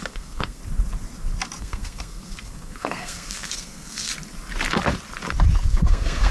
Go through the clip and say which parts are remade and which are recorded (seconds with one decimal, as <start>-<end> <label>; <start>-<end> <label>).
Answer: 0.0-0.6 remade; 0.6-1.6 recorded; 1.6-4.1 remade; 4.1-5.7 recorded; 5.7-6.3 remade